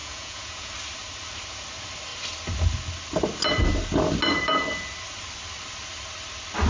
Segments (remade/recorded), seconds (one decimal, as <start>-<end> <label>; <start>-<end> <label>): 0.0-0.7 remade; 0.7-6.7 recorded